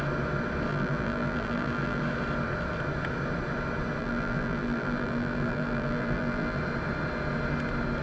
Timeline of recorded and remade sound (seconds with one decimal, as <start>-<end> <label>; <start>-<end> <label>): 0.0-0.7 recorded; 0.7-2.0 remade; 2.0-4.0 recorded; 4.0-6.6 remade; 6.6-8.0 recorded